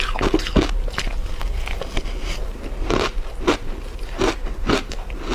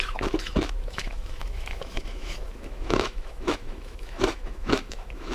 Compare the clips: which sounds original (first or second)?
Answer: first